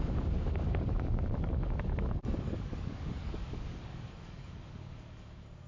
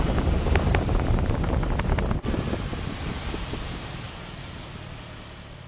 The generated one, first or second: first